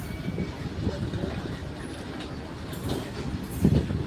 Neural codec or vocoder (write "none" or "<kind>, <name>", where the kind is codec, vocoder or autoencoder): none